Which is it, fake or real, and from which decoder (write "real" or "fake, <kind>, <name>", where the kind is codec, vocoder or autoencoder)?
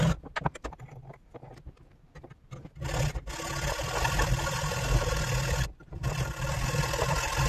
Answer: real